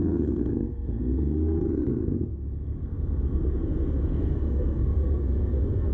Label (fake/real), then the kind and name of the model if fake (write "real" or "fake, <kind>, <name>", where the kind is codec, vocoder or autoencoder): fake, codec, SNAC